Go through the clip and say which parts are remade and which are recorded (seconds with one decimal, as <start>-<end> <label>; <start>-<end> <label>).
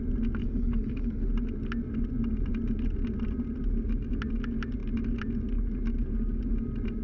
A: 0.0-0.4 recorded; 0.4-1.3 remade; 1.3-7.0 recorded